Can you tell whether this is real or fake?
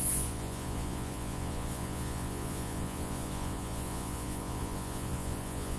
fake